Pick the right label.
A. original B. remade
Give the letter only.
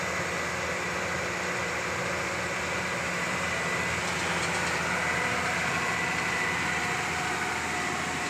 A